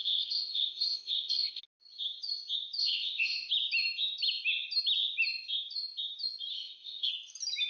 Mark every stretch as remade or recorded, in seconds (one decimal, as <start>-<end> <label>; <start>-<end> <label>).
0.0-1.6 remade; 1.6-2.8 recorded; 2.8-3.5 remade; 3.5-6.5 recorded; 6.5-7.1 remade; 7.1-7.7 recorded